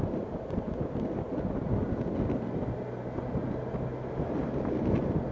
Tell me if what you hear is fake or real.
real